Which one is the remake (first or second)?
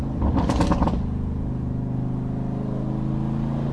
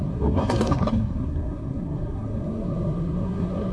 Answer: second